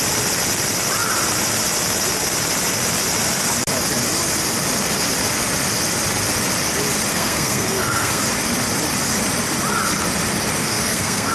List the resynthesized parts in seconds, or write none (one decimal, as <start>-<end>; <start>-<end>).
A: 7.1-8.2; 10.6-11.3